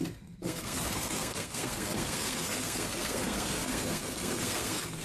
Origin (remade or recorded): remade